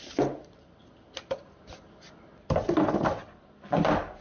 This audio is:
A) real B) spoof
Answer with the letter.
A